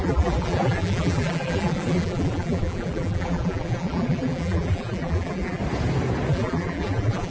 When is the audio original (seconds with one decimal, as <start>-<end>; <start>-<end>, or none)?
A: 5.6-6.3